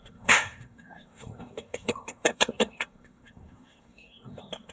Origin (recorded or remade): remade